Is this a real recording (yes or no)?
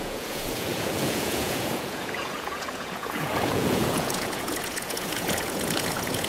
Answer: no